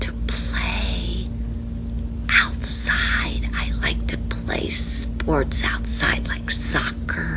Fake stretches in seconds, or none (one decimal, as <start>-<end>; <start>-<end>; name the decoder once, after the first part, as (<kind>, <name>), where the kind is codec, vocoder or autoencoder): 5.9-6.6 (codec, DAC)